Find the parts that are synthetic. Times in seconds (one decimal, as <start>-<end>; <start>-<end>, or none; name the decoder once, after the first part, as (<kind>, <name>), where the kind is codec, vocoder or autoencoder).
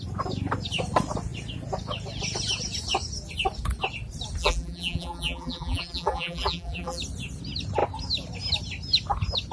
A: 4.4-7.0 (vocoder, BigVGAN v2)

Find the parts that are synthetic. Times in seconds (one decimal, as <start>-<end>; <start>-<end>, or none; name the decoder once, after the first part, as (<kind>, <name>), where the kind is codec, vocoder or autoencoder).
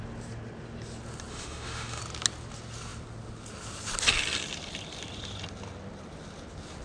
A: 1.3-2.0 (autoencoder, DAC-VAE)